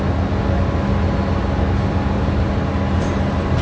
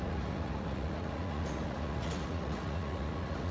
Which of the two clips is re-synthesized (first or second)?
second